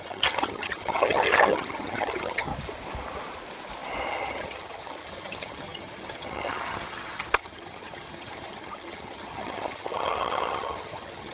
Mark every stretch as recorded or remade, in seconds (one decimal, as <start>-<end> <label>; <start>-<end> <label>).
0.0-2.5 remade; 2.5-4.1 recorded; 4.1-11.3 remade

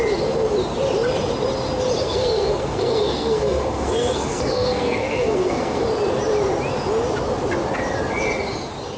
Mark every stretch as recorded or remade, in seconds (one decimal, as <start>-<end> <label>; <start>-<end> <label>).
0.0-2.0 recorded; 2.0-5.8 remade; 5.8-9.0 recorded

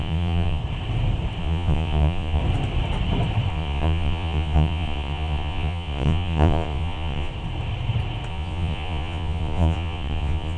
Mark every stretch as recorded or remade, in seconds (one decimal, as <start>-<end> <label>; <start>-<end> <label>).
0.0-0.6 remade; 0.6-1.4 recorded; 1.4-2.4 remade; 2.4-3.5 recorded; 3.5-7.3 remade; 7.3-8.3 recorded; 8.3-10.6 remade

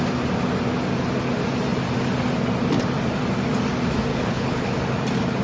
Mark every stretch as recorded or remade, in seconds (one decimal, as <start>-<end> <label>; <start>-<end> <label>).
0.0-4.1 recorded; 4.1-4.7 remade; 4.7-5.4 recorded